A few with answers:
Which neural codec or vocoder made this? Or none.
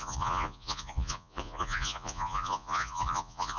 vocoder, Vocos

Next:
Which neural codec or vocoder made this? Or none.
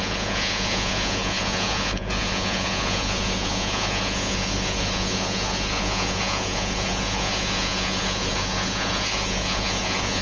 vocoder, Vocos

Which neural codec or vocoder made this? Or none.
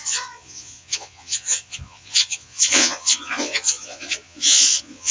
vocoder, Vocos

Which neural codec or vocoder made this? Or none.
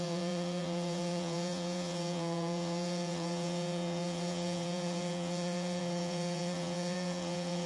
vocoder, Vocos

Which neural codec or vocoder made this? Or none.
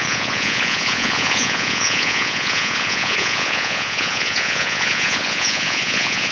vocoder, Vocos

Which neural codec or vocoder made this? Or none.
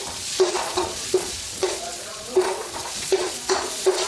vocoder, Vocos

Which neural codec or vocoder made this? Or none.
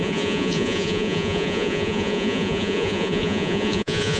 vocoder, Vocos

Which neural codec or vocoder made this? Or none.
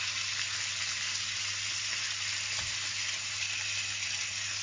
none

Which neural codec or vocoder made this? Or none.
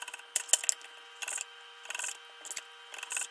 none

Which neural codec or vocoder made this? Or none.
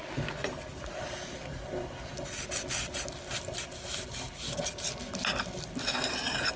none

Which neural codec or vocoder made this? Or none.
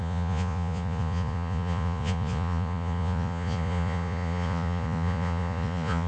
vocoder, Vocos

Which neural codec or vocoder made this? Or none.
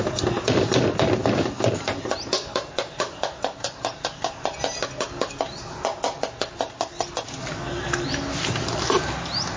none